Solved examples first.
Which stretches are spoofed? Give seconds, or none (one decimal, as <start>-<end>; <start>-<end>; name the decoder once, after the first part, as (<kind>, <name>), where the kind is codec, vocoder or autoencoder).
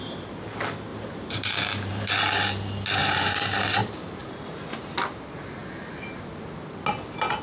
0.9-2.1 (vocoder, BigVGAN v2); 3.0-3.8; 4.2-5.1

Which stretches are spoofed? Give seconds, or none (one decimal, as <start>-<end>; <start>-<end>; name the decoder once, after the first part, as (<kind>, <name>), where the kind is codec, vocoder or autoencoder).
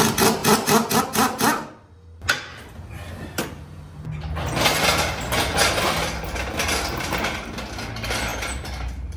8.3-9.2 (vocoder, BigVGAN v2)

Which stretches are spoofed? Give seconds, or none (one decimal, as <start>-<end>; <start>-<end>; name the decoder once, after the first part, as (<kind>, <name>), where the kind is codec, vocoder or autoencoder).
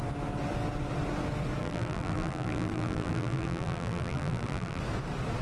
1.6-4.8 (vocoder, BigVGAN v2)